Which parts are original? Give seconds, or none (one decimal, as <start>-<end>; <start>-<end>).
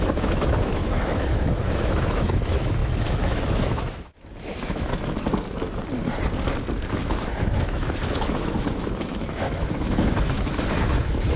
4.9-7.0